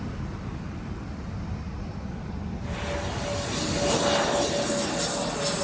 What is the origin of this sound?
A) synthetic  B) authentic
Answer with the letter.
B